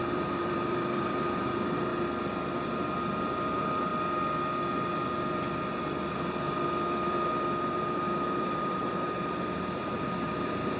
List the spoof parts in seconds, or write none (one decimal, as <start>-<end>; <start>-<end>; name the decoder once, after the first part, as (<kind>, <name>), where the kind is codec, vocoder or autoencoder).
0.0-1.9 (vocoder, BigVGAN v2); 3.5-3.9; 7.7-10.8